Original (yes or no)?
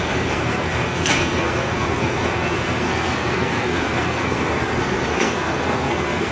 no